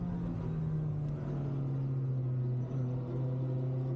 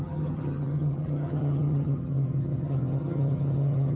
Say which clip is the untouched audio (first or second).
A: first